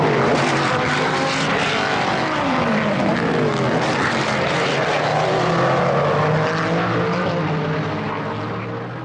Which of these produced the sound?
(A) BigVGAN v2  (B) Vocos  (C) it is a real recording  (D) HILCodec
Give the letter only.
C